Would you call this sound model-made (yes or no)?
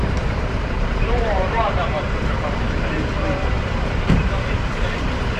yes